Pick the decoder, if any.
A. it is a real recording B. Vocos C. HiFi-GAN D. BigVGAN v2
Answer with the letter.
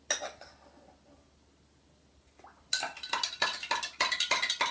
A